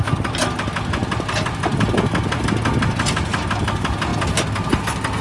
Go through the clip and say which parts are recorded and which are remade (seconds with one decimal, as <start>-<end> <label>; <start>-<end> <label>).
0.0-1.0 recorded; 1.0-2.4 remade; 2.4-4.1 recorded; 4.1-4.8 remade; 4.8-5.2 recorded